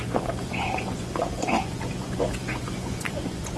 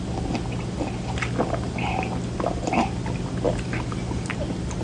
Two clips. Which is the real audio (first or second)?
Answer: second